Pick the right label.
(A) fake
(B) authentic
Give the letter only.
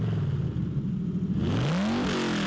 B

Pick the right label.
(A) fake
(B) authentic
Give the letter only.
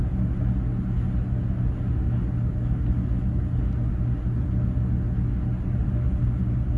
B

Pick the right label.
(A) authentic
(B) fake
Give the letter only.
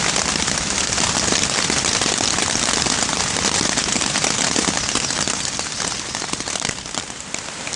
A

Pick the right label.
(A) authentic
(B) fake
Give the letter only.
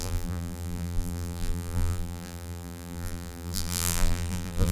B